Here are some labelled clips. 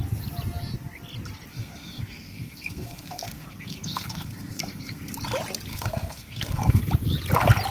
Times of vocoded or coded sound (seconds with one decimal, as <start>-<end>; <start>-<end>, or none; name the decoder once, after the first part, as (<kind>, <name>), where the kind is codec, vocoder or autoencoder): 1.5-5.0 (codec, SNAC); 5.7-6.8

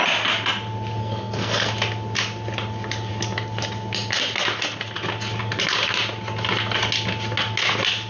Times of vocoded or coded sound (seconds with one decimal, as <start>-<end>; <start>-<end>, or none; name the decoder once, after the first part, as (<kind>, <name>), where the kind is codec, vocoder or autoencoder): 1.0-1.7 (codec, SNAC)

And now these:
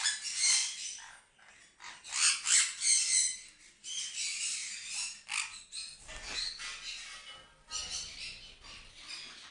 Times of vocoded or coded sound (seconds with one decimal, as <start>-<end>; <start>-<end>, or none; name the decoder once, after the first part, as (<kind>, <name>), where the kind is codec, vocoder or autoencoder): none